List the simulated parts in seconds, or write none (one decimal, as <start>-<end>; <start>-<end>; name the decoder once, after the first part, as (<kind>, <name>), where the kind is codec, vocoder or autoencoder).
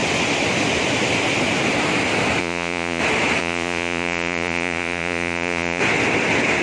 2.4-3.0 (vocoder, Vocos); 3.4-5.8